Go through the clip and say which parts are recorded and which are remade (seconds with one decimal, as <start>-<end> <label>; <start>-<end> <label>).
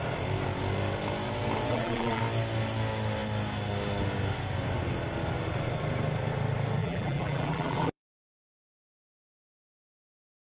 0.0-1.7 recorded; 1.7-2.2 remade; 2.2-6.8 recorded; 6.8-8.8 remade; 8.8-10.4 recorded